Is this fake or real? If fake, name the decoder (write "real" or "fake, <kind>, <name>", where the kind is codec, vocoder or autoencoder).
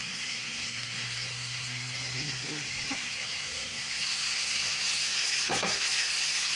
fake, codec, SNAC